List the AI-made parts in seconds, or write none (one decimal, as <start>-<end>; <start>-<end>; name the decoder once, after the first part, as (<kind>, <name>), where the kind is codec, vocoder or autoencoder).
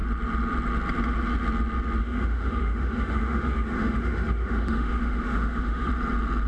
2.0-5.9 (autoencoder, DAC-VAE)